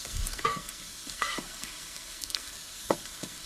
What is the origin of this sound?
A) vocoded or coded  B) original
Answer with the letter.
A